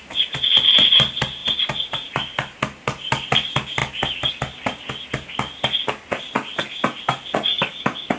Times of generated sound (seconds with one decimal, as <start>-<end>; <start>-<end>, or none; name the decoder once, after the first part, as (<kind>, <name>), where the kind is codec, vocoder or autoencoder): 7.5-8.2 (codec, DAC)